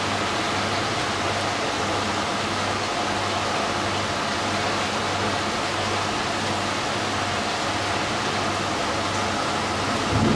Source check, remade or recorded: recorded